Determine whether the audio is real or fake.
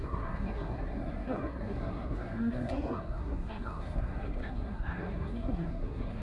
fake